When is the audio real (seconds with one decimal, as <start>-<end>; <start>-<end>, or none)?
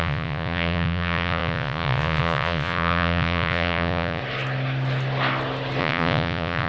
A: 4.2-5.8